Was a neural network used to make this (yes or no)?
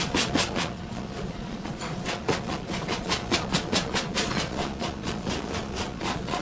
yes